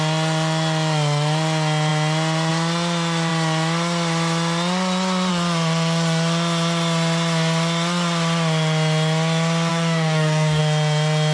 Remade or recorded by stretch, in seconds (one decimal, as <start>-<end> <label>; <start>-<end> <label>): 0.0-9.7 recorded; 9.7-10.6 remade; 10.6-11.3 recorded